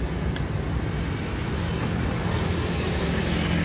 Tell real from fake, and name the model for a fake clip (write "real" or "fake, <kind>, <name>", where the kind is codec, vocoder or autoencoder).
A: real